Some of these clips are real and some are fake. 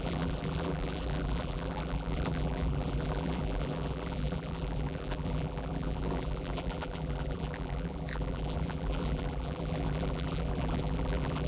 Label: fake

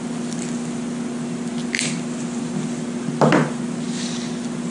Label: real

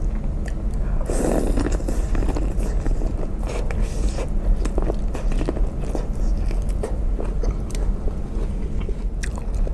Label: real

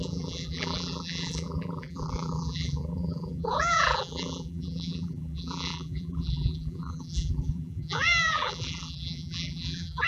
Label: fake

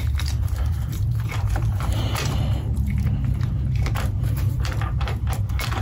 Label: fake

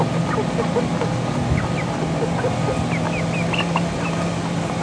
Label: real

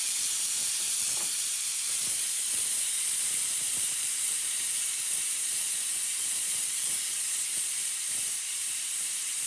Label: fake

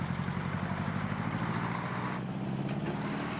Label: real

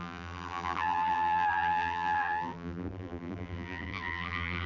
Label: fake